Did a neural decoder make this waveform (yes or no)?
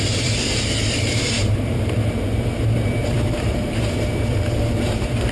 yes